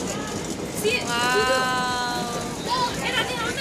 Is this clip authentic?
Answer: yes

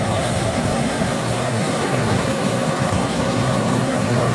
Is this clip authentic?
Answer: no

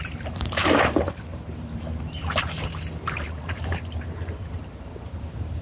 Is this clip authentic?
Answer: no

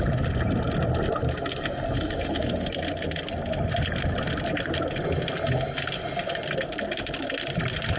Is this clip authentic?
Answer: yes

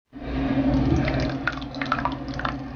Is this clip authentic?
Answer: yes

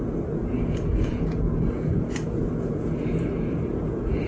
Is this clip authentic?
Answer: no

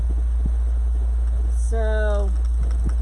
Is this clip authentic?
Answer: yes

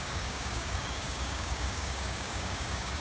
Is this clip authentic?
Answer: no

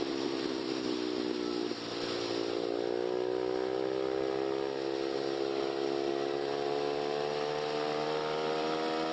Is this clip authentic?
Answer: yes